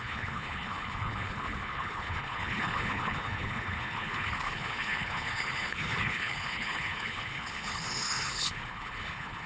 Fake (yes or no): yes